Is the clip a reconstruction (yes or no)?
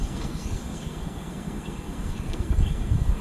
yes